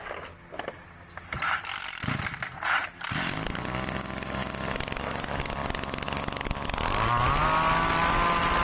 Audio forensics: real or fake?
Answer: real